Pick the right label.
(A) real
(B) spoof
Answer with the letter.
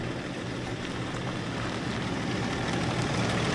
B